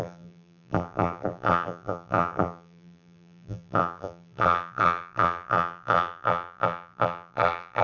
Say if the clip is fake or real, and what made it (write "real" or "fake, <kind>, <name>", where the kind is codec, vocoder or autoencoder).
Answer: fake, vocoder, BigVGAN v2